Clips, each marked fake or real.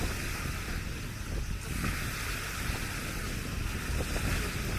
real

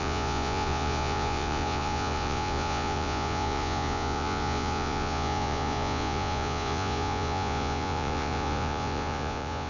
fake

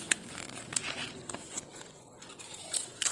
fake